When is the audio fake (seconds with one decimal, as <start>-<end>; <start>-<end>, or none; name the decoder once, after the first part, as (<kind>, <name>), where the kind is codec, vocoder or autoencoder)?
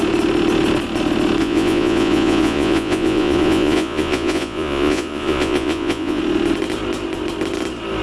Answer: 1.4-6.2 (vocoder, Vocos)